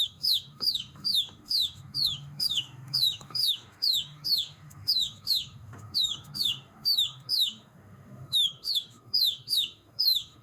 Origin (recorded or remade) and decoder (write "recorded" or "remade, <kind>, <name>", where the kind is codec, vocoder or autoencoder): remade, autoencoder, DAC-VAE